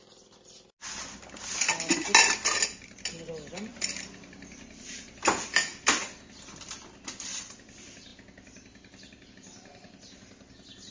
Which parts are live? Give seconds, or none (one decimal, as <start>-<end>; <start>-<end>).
0.0-10.9